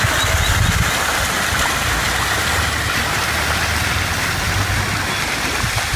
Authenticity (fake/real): fake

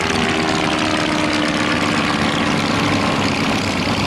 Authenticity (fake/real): real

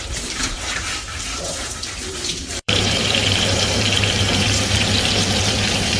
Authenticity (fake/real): fake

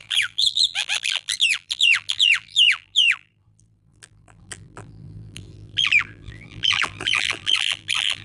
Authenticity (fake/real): fake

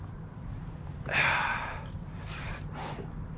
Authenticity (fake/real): fake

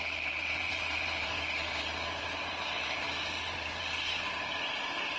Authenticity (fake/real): fake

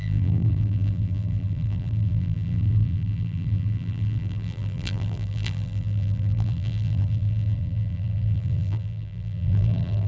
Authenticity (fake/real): fake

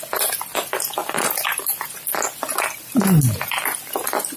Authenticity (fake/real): real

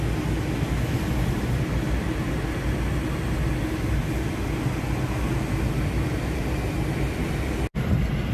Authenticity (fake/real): real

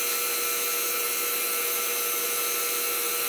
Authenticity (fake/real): real